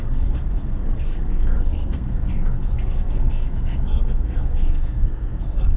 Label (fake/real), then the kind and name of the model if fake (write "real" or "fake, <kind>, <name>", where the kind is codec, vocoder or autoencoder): fake, codec, SNAC